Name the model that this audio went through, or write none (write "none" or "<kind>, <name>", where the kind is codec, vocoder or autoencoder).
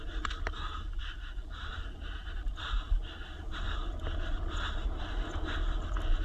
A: none